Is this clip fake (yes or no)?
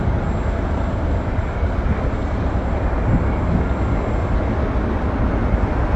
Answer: no